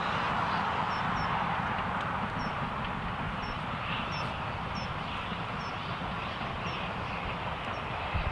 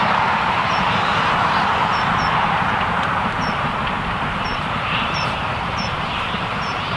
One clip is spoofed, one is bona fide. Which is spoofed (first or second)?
second